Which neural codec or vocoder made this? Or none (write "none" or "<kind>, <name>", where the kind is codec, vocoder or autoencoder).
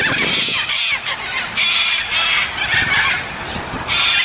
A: none